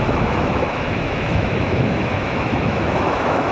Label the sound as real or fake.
fake